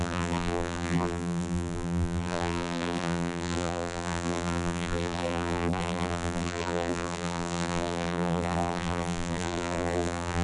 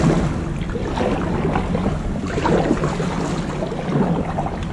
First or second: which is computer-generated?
first